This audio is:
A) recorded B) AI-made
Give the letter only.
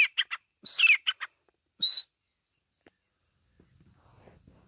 A